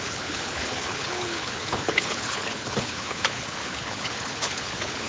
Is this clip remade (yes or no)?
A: yes